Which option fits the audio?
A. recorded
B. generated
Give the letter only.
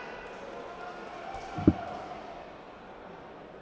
A